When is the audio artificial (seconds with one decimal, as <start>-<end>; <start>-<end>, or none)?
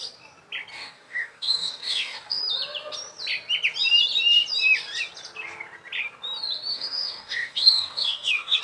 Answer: 0.7-2.4; 6.7-8.6